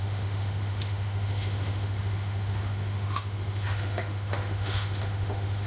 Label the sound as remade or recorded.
remade